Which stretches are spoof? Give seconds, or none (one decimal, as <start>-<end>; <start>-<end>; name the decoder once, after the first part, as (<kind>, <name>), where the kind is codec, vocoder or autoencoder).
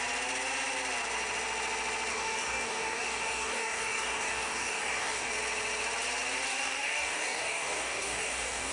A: 2.1-5.3 (codec, DAC); 6.5-8.7